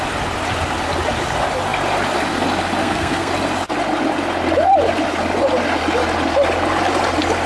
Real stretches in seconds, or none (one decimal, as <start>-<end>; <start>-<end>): 0.0-2.8; 3.3-7.5